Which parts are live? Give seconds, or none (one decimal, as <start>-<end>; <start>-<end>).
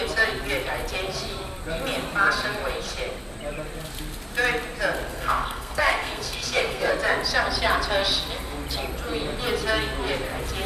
0.0-5.1; 6.9-10.7